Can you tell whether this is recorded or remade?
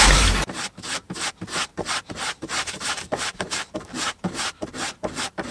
remade